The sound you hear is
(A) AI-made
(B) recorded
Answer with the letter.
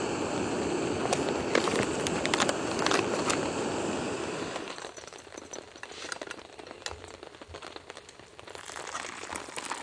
B